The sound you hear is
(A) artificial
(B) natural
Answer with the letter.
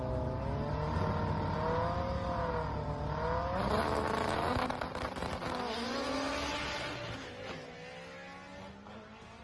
B